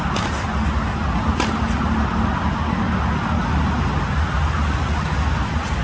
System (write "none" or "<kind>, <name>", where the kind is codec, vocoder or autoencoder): none